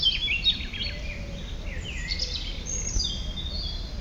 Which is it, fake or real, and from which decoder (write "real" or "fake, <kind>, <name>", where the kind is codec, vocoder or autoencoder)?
real